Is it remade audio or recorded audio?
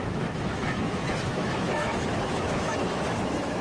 remade